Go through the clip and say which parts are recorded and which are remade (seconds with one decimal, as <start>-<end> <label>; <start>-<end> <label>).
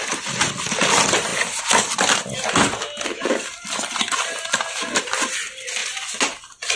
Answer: 0.0-6.8 recorded